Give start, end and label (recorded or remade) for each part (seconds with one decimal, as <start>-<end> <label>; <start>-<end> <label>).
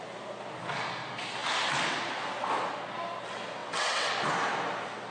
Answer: 0.0-3.6 recorded; 3.6-4.1 remade; 4.1-5.1 recorded